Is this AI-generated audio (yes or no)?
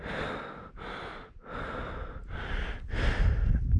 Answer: no